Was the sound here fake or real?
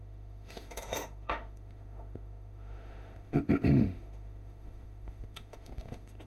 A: fake